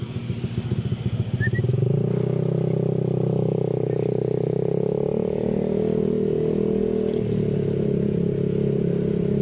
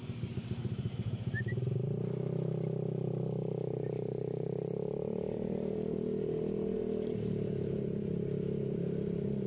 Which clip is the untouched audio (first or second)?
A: first